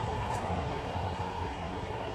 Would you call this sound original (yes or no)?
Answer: no